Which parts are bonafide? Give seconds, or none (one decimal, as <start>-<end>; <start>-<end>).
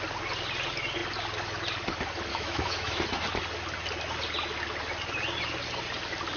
0.0-2.3; 3.0-6.4